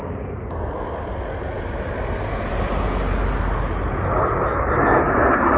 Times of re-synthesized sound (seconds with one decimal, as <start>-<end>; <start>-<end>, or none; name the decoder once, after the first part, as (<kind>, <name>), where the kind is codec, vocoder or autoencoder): 1.5-2.7 (vocoder, BigVGAN v2)